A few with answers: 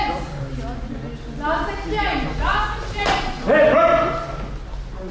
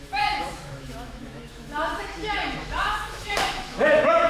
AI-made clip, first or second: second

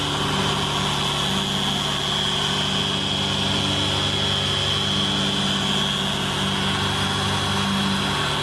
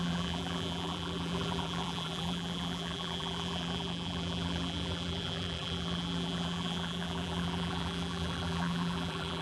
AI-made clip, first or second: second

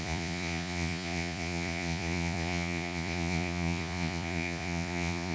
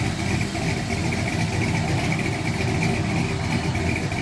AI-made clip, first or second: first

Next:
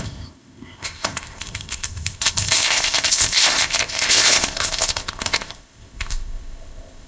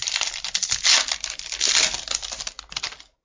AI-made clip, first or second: first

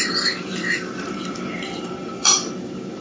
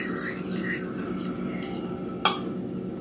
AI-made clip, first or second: first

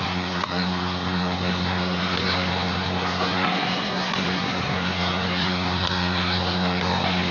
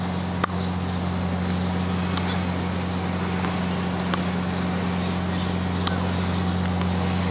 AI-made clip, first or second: first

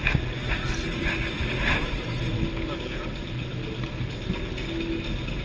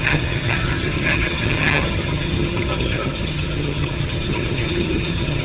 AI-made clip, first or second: second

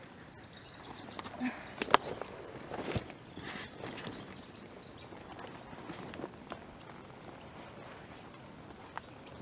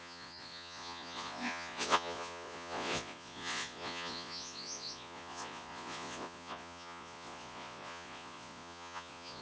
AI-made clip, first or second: second